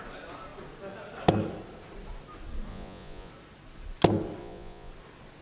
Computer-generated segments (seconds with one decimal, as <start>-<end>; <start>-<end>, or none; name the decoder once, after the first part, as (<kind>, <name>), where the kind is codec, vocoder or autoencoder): 2.7-3.3 (vocoder, Vocos); 4.4-4.9